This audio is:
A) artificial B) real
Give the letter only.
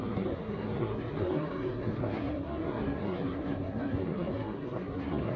A